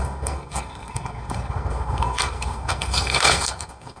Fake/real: fake